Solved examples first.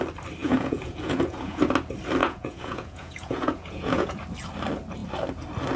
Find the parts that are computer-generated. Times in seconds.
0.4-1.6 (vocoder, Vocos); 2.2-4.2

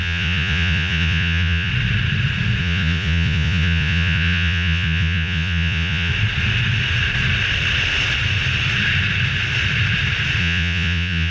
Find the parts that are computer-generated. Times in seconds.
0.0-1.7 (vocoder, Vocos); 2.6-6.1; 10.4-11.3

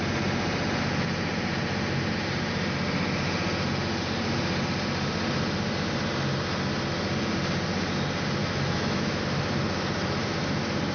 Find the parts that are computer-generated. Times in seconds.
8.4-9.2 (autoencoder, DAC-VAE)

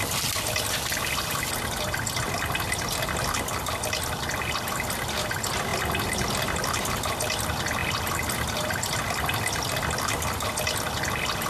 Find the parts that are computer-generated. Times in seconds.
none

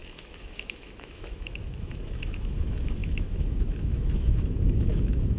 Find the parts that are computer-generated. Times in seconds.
0.0-5.4 (autoencoder, DAC-VAE)

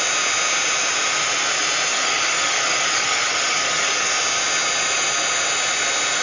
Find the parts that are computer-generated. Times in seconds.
1.9-4.1 (codec, DAC)